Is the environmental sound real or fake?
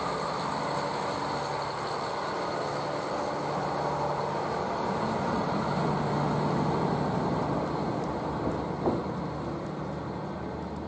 real